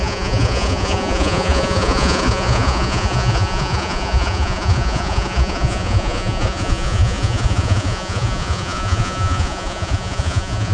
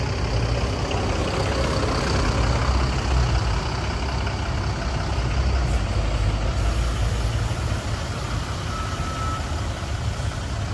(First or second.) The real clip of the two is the second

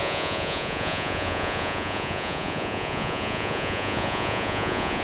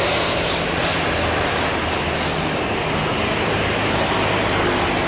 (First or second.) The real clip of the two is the second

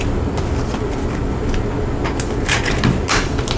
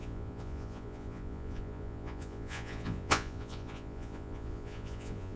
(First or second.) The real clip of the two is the first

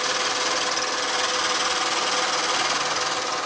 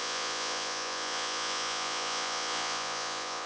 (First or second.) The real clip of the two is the first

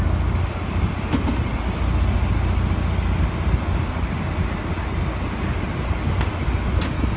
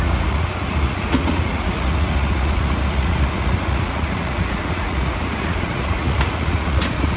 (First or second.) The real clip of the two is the first